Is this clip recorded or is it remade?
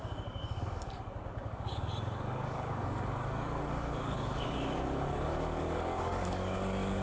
remade